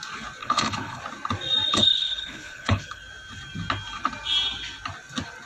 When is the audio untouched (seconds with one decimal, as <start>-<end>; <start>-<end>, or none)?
0.0-0.4; 1.0-1.7; 3.0-5.5